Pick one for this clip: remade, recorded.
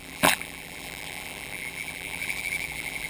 remade